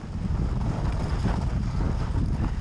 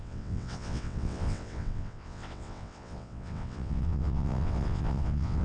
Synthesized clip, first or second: second